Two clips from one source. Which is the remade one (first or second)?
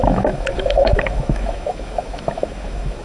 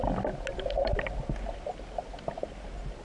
first